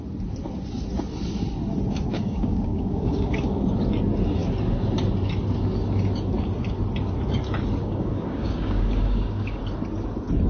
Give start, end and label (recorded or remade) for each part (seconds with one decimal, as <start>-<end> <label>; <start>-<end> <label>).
0.0-2.1 recorded; 2.1-3.3 remade; 3.3-7.8 recorded; 7.8-9.6 remade; 9.6-10.5 recorded